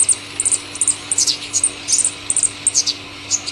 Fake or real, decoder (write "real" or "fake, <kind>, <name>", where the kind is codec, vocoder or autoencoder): real